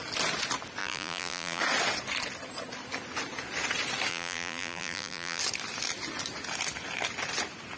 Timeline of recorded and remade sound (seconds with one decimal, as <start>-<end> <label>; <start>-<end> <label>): 0.0-0.8 recorded; 0.8-1.6 remade; 1.6-4.1 recorded; 4.1-5.4 remade; 5.4-7.8 recorded